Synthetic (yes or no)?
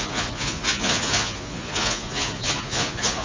yes